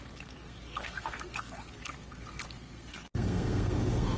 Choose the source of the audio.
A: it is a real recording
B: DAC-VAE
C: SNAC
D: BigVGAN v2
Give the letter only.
C